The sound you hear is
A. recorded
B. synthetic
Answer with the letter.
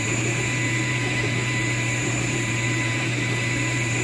B